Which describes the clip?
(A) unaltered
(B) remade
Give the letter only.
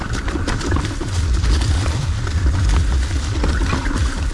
A